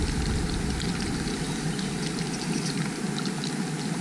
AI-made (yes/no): no